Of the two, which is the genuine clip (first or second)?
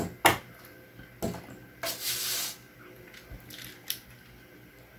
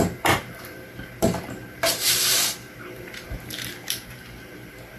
first